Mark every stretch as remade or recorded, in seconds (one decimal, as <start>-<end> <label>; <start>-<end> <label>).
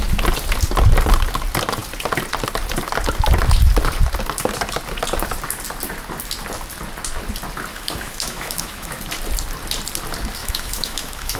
0.0-7.7 recorded; 7.7-9.0 remade; 9.0-10.4 recorded; 10.4-11.4 remade